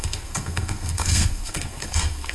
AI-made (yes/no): yes